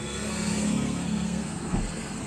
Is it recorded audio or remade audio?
remade